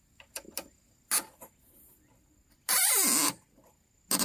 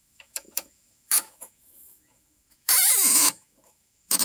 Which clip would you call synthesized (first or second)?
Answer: second